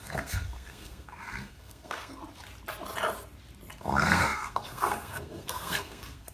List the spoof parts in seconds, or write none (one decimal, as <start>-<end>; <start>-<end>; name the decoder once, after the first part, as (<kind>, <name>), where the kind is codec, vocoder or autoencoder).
0.0-2.2 (codec, SNAC); 3.8-6.3